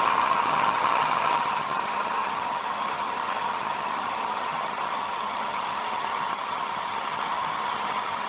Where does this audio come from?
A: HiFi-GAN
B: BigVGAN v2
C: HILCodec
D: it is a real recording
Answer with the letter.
A